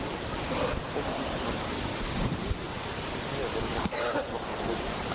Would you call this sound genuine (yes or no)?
yes